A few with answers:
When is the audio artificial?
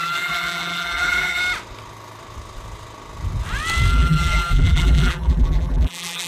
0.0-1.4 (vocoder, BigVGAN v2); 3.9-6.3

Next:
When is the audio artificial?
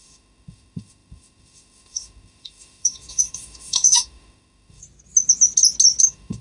0.0-4.8 (autoencoder, DAC-VAE); 6.0-6.4